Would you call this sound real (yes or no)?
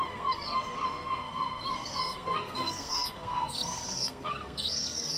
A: no